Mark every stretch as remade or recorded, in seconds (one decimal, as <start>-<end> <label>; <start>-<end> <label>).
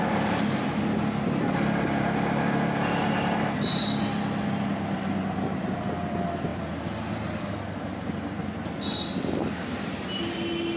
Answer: 0.0-10.8 recorded